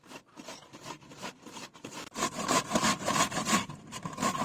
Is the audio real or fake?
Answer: fake